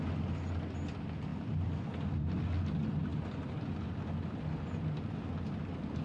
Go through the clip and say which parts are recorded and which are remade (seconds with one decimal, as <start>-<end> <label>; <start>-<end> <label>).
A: 0.0-6.0 recorded